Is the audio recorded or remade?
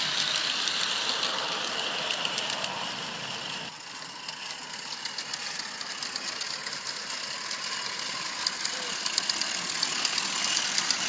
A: recorded